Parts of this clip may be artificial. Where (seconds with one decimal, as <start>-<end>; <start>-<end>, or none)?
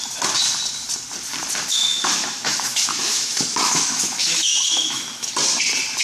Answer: 1.7-5.3